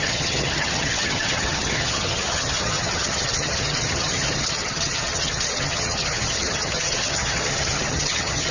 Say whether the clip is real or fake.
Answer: fake